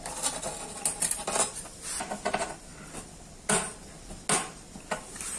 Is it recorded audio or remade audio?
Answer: recorded